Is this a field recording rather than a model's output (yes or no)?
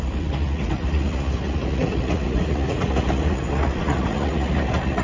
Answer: no